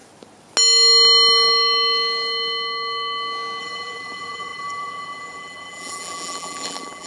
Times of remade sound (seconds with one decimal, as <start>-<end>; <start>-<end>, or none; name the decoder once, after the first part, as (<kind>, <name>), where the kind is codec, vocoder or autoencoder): 3.6-7.1 (vocoder, BigVGAN v2)